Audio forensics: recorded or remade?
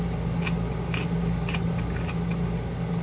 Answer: recorded